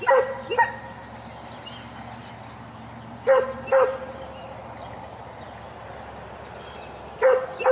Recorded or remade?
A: recorded